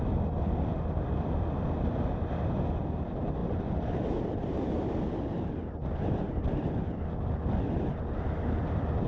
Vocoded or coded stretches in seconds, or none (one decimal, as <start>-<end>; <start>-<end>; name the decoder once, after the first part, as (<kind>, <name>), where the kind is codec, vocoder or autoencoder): none